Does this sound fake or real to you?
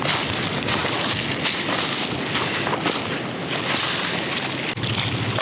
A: real